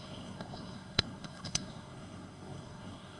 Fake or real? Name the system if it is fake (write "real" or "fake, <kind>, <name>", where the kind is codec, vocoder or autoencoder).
fake, codec, SNAC